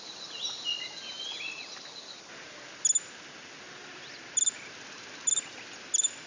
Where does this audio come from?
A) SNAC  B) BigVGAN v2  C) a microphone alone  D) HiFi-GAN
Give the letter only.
C